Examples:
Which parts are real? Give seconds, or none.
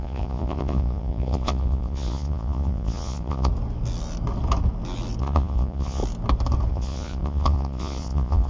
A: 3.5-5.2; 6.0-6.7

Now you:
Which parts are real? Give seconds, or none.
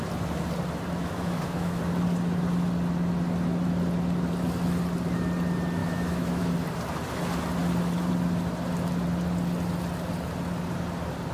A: 0.0-1.0; 1.8-5.8; 6.4-11.3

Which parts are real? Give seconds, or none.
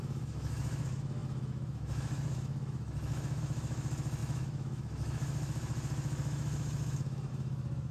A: none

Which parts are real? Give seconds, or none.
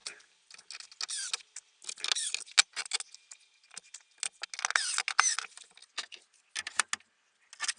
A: 0.7-7.8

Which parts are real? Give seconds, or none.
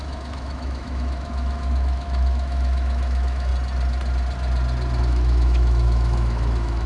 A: 3.5-5.0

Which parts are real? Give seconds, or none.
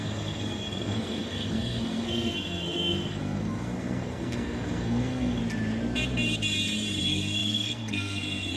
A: 5.4-7.0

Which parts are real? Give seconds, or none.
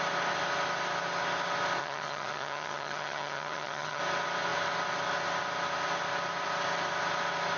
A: 0.0-1.8; 4.0-7.6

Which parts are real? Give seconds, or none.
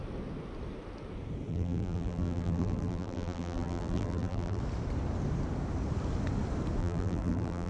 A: 0.0-1.5; 4.6-6.8